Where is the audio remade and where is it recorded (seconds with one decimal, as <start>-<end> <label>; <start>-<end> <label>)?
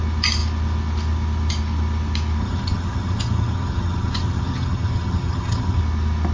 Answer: 0.0-2.4 recorded; 2.4-5.8 remade; 5.8-6.3 recorded